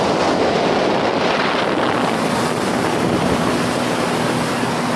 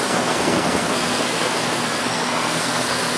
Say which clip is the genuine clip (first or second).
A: first